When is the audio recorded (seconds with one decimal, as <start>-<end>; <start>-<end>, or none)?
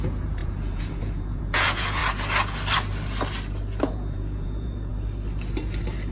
2.0-3.9; 4.9-6.1